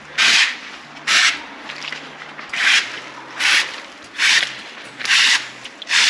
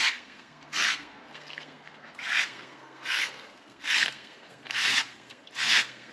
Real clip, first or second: first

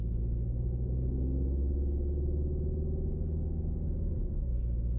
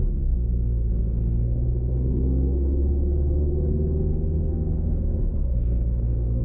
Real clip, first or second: first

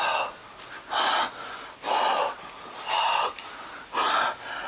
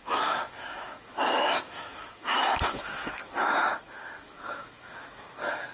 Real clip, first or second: first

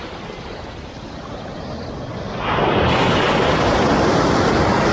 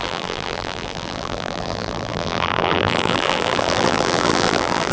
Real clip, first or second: first